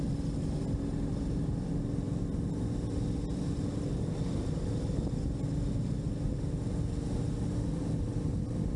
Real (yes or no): yes